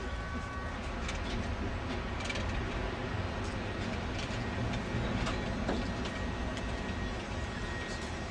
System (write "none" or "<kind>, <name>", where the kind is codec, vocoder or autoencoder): none